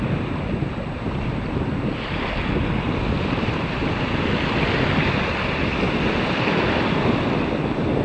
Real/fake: real